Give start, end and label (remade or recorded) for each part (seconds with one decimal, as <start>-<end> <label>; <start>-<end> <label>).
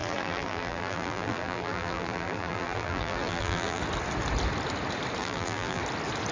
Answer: 0.0-3.8 remade; 3.8-5.2 recorded; 5.2-5.8 remade; 5.8-6.3 recorded